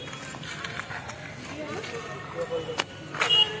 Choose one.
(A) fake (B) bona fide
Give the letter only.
B